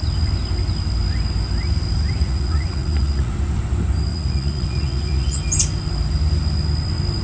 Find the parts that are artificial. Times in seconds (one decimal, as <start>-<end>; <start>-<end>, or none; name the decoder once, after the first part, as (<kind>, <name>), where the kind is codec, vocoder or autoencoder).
2.2-3.3 (vocoder, Vocos); 4.1-5.4